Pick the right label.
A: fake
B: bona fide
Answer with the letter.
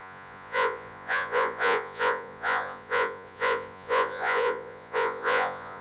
A